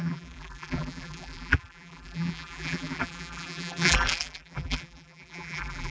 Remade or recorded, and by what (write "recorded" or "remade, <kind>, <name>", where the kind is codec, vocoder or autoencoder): remade, vocoder, BigVGAN v2